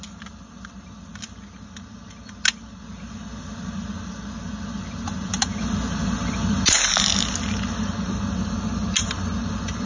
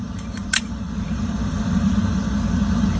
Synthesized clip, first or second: second